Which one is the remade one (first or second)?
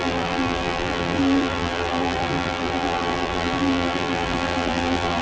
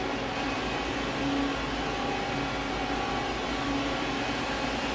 first